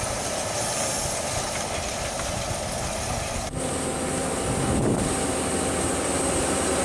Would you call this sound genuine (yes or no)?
yes